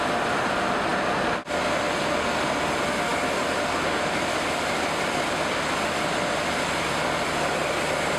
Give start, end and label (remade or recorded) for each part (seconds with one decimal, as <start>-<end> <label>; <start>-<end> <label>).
0.0-8.2 recorded